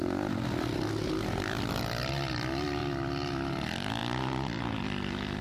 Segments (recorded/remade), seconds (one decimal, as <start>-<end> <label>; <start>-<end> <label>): 0.0-5.4 recorded